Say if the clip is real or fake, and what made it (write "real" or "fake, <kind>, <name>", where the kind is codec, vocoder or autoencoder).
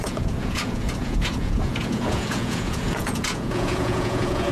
fake, vocoder, Vocos